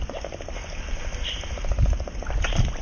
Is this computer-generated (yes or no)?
no